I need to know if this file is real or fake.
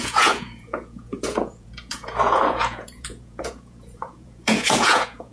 fake